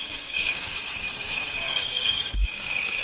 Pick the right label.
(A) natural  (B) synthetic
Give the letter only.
B